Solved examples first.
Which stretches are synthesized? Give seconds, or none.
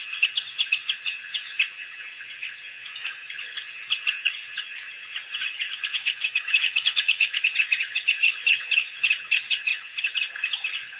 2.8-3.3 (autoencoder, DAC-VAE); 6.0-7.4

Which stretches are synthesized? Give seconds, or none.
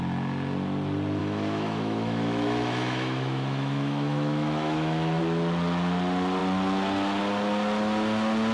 1.2-5.2 (autoencoder, DAC-VAE)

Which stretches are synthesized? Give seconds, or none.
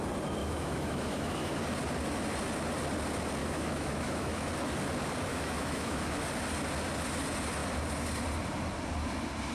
0.4-1.6 (autoencoder, DAC-VAE); 3.4-4.5; 5.3-6.2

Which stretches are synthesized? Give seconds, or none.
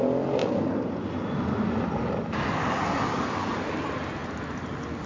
none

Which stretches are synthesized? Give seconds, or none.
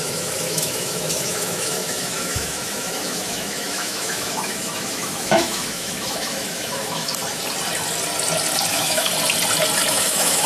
0.0-7.2 (autoencoder, DAC-VAE); 8.7-9.1; 9.9-10.5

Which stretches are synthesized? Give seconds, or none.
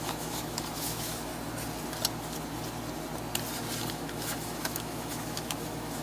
0.0-1.3 (autoencoder, DAC-VAE); 3.9-6.0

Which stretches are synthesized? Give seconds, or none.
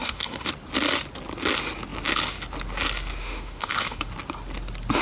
0.0-0.5 (autoencoder, DAC-VAE); 3.2-4.1